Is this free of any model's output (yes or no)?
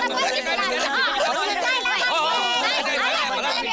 yes